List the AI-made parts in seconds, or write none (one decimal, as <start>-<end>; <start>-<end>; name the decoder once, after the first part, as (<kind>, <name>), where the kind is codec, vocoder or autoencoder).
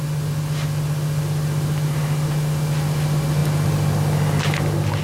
none